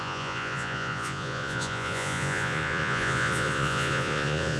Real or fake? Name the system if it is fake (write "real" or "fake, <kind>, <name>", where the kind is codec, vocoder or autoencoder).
fake, vocoder, Vocos